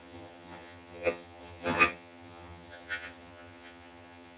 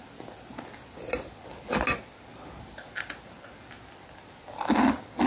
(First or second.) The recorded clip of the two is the second